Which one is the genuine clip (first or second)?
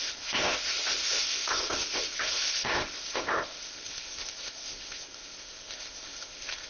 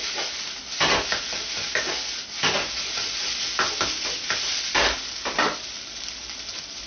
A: second